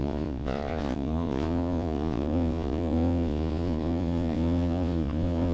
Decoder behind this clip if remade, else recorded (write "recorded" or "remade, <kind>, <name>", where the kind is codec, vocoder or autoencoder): remade, vocoder, Vocos